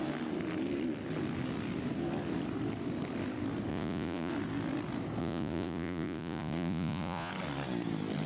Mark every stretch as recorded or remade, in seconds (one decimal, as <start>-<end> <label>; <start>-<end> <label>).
0.0-3.7 recorded; 3.7-4.3 remade; 4.3-5.2 recorded; 5.2-7.3 remade; 7.3-8.3 recorded